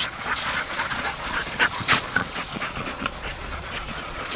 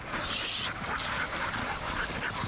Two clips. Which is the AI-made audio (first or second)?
first